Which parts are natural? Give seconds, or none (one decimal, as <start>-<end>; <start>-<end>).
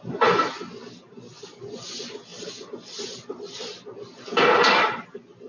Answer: 0.0-5.5